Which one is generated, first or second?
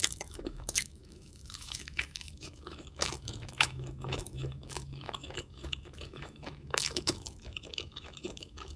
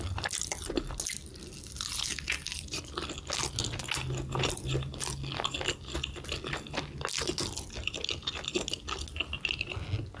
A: first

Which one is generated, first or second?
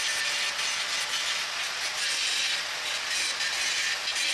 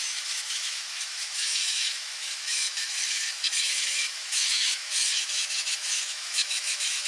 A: second